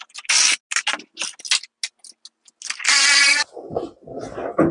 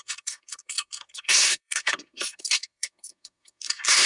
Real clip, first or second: first